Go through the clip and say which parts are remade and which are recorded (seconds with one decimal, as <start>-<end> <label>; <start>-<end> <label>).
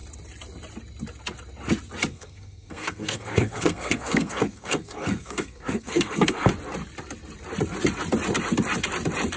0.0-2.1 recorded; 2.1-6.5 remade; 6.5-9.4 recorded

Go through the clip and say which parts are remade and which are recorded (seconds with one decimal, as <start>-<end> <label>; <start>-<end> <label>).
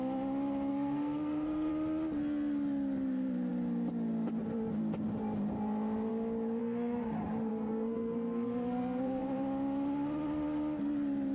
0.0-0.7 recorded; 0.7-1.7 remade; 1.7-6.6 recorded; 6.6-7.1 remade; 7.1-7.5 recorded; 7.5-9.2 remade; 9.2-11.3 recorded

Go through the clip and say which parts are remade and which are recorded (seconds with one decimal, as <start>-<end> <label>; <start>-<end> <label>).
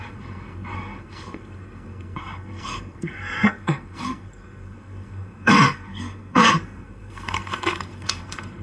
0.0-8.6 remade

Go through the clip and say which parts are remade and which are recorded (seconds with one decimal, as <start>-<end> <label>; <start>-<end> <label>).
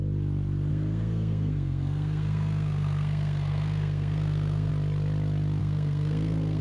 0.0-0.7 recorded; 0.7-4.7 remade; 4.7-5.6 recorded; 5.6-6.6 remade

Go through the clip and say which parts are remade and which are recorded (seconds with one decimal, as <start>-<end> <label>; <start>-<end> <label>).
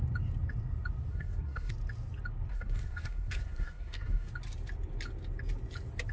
0.0-1.1 recorded; 1.1-1.7 remade; 1.7-2.5 recorded; 2.5-4.3 remade; 4.3-6.1 recorded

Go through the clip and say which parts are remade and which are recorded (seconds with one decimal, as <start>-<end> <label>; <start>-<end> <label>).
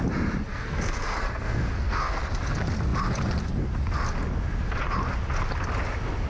0.0-0.5 recorded; 0.5-2.2 remade; 2.2-6.3 recorded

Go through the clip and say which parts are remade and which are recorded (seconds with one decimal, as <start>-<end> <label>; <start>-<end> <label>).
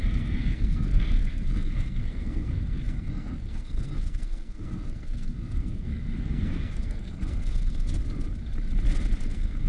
0.0-8.0 remade; 8.0-9.2 recorded; 9.2-9.7 remade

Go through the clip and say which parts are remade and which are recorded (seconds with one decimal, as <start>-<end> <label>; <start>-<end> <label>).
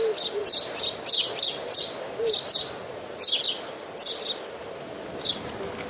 0.0-5.9 recorded